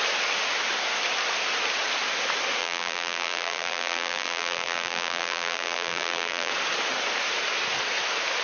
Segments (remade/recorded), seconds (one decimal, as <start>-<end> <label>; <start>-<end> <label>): 0.0-2.6 recorded; 2.6-6.5 remade; 6.5-8.4 recorded